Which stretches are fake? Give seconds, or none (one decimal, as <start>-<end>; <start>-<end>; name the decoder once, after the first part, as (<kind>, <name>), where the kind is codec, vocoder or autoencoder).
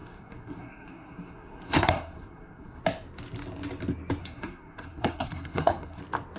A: 0.0-2.8 (codec, SNAC); 4.2-6.0